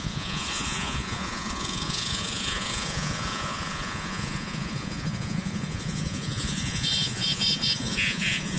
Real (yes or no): no